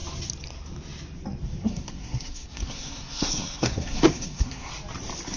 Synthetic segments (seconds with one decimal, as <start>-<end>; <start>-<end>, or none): 1.6-4.7